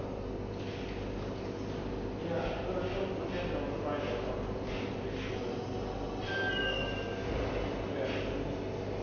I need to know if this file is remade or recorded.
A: recorded